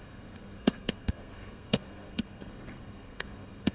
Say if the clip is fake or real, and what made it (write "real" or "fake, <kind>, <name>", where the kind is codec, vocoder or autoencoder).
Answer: fake, codec, SNAC